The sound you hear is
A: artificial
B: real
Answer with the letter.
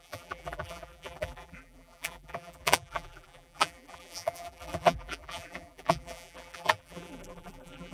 A